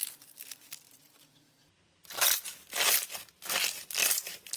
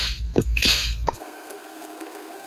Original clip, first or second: first